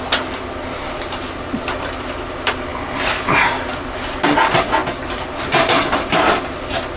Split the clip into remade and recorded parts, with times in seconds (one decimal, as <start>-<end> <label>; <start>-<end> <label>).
0.0-7.0 recorded